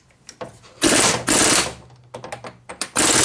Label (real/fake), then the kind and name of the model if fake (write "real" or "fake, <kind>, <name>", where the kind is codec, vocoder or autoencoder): real